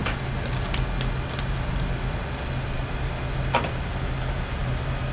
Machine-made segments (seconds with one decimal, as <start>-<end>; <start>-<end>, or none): none